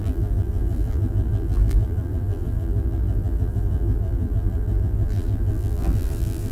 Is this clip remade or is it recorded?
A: remade